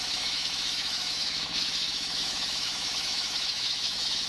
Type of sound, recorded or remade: remade